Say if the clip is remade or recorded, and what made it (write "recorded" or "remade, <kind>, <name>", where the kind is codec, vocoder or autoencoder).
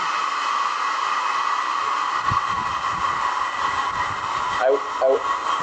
recorded